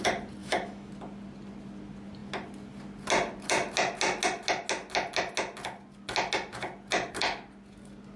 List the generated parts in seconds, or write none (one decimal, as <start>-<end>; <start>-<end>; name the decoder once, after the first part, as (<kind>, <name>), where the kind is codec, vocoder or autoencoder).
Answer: 0.4-0.9 (autoencoder, DAC-VAE)